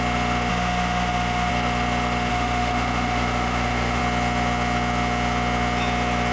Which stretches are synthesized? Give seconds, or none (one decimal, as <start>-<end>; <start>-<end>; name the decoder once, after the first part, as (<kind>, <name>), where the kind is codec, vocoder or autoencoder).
0.5-1.5 (autoencoder, DAC-VAE); 2.3-4.0